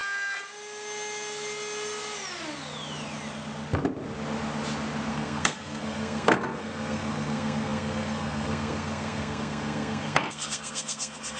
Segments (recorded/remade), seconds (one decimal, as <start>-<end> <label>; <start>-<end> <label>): 0.0-5.1 recorded; 5.1-11.4 remade